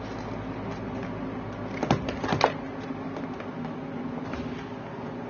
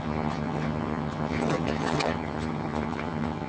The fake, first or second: second